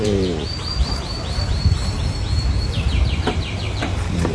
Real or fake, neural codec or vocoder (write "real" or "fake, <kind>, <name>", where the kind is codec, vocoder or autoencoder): fake, vocoder, BigVGAN v2